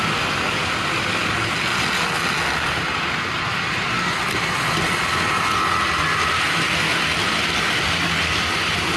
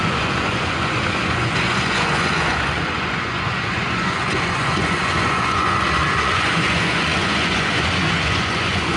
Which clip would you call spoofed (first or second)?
second